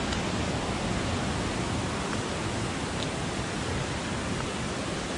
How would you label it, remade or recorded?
recorded